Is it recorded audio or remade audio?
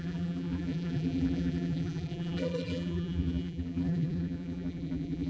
remade